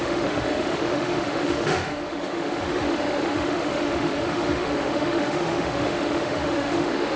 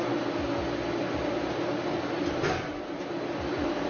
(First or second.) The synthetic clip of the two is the first